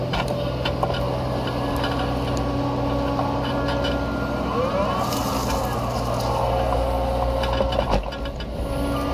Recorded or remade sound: recorded